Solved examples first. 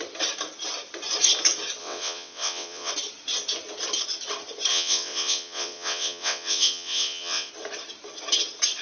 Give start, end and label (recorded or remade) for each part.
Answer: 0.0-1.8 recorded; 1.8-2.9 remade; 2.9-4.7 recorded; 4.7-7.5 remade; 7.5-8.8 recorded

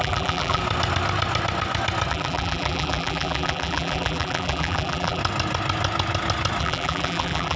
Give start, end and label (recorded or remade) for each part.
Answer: 0.0-0.6 remade; 0.6-2.1 recorded; 2.1-5.2 remade; 5.2-6.6 recorded; 6.6-7.6 remade

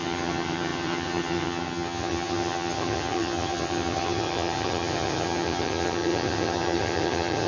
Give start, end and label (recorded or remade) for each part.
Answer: 0.0-7.5 remade

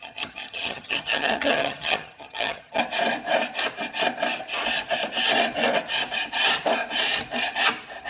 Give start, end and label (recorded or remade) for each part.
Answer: 0.0-2.8 remade; 2.8-8.1 recorded

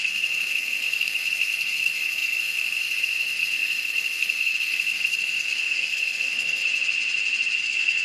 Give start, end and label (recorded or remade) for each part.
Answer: 0.0-6.6 remade; 6.6-7.6 recorded; 7.6-8.0 remade